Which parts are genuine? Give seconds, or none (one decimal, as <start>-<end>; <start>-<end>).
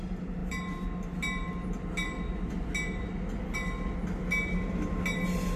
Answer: 0.0-5.6